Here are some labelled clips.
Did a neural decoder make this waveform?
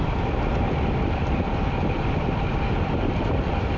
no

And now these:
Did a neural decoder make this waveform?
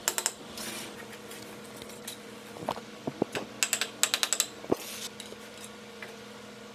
no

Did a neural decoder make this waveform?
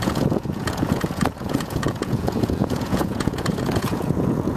yes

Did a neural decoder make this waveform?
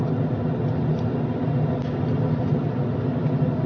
no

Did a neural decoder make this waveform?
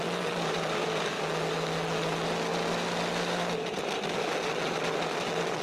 no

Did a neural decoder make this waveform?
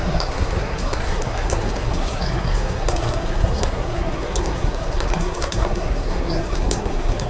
yes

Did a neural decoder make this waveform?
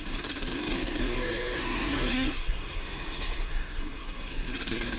yes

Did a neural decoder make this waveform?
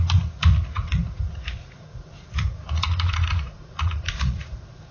yes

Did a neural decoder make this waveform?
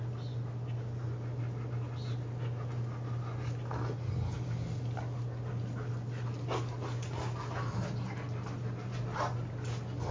no